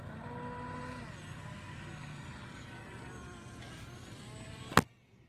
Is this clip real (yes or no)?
yes